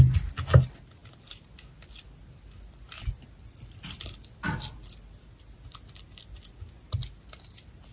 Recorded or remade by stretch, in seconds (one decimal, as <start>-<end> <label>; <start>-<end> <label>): 0.0-7.9 recorded